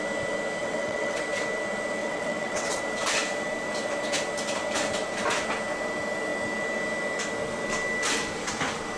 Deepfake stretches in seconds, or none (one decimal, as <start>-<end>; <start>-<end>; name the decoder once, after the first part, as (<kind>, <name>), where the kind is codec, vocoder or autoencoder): 0.6-1.2 (vocoder, WaveNeXt); 2.0-2.8